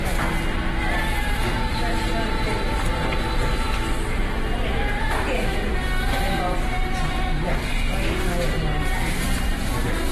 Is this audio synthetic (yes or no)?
no